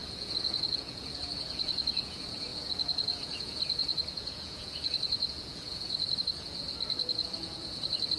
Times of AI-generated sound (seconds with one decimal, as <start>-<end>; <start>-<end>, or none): 0.0-8.2